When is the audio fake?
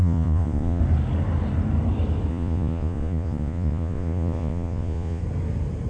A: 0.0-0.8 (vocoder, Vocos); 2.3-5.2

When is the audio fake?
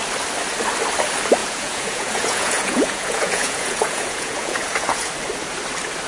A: 1.4-5.1 (vocoder, Vocos)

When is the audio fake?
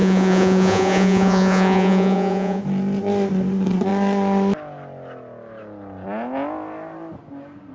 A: 0.0-2.6 (vocoder, Vocos)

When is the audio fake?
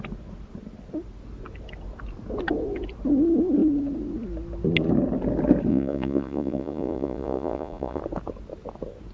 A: 5.7-8.0 (vocoder, Vocos)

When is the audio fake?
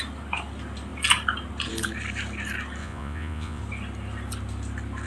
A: 2.8-3.6 (vocoder, Vocos)